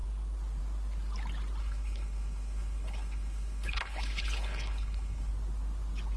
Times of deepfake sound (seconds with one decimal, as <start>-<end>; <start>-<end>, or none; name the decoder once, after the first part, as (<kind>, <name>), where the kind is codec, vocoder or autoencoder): 1.6-5.3 (codec, HILCodec)